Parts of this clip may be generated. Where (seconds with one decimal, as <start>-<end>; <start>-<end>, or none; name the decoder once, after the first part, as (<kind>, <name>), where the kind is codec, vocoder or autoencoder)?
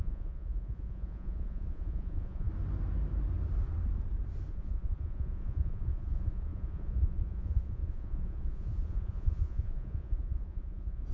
0.0-2.5 (vocoder, Vocos); 4.5-11.1